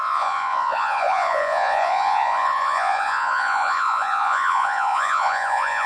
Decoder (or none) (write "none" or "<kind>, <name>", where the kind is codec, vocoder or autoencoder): vocoder, Vocos